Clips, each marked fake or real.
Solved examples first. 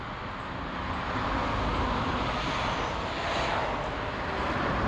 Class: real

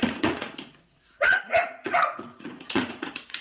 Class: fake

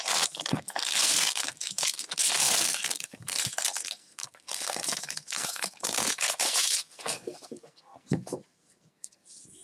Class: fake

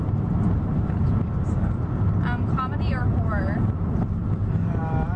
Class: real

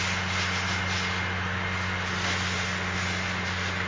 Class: real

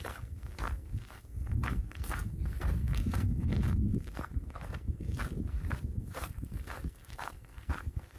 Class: fake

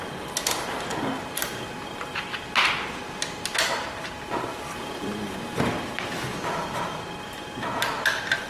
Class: real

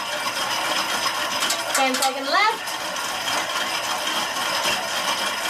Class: real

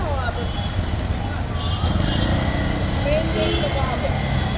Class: real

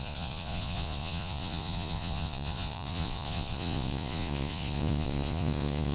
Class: fake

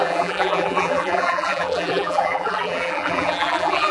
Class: fake